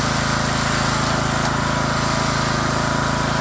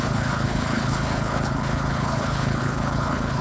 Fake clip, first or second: second